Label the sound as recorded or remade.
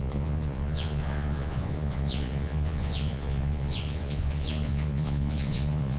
remade